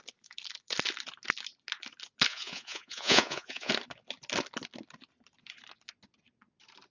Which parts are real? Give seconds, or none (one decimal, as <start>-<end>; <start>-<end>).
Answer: 0.0-2.3; 3.7-6.9